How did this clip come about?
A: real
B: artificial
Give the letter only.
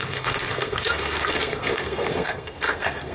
B